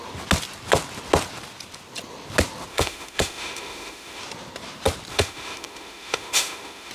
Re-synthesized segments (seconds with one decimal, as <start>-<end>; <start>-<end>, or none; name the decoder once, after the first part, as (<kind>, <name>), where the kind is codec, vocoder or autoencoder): 2.7-4.2 (autoencoder, DAC-VAE); 5.1-6.9